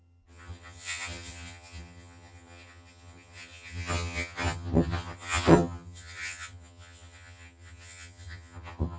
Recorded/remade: remade